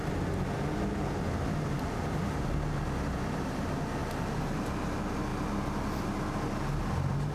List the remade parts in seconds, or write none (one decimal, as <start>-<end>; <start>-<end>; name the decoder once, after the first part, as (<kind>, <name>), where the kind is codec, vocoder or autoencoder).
none